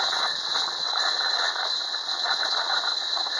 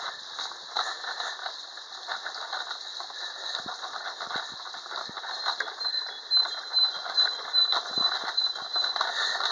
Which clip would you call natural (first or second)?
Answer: second